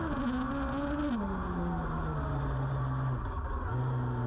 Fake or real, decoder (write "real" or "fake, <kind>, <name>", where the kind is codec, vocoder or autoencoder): real